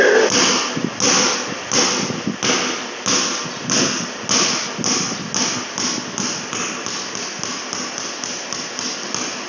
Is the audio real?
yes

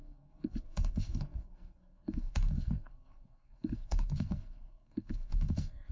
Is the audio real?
no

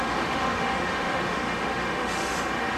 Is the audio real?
no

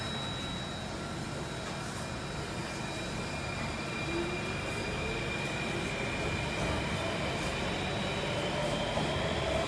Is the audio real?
yes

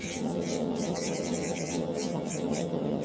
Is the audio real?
no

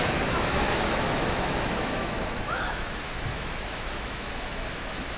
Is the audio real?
no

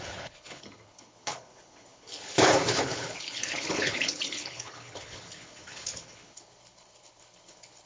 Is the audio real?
no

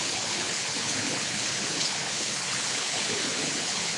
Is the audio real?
no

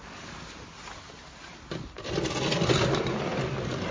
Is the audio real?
yes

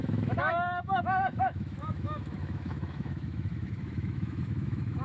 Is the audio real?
no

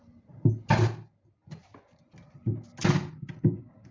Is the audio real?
yes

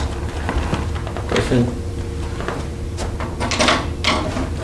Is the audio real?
yes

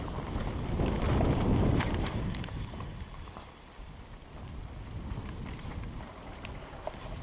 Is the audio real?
yes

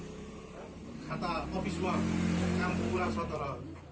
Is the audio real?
no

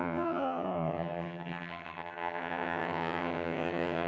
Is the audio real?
no